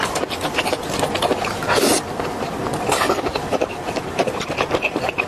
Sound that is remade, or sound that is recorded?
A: remade